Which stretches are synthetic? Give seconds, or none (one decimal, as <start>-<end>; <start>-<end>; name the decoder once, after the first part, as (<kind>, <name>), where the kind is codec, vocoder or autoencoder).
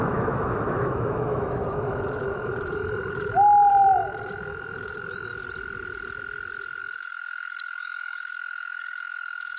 0.0-5.3 (autoencoder, DAC-VAE); 6.8-9.6